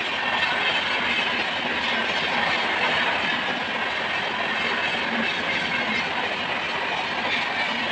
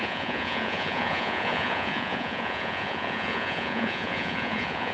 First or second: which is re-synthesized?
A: second